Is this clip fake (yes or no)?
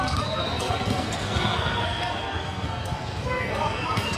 yes